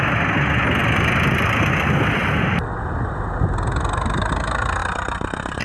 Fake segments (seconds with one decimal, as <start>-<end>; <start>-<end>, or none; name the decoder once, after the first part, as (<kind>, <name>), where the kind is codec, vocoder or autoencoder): none